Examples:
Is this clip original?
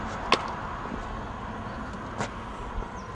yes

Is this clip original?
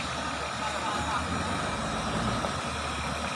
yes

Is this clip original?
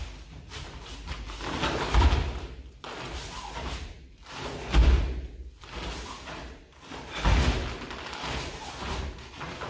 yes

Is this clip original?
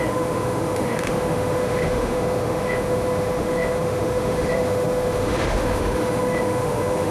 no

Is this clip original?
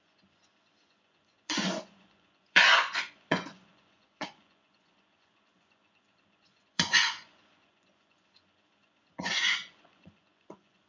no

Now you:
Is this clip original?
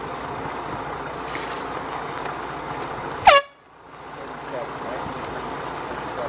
yes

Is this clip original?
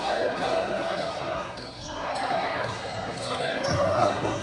no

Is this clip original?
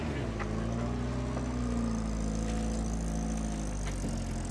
yes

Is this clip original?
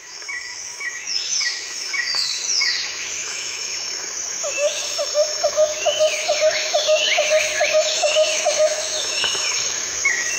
no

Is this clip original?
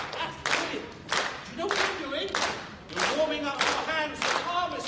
yes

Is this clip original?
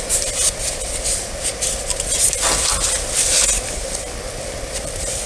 yes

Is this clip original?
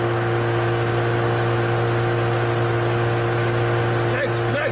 yes